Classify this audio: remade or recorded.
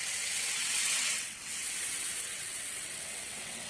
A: remade